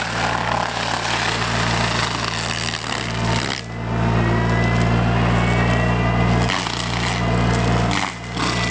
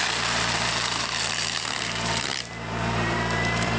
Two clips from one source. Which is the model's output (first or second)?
second